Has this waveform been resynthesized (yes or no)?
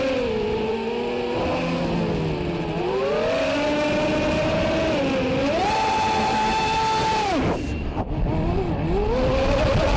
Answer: no